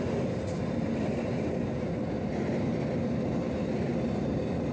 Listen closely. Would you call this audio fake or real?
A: real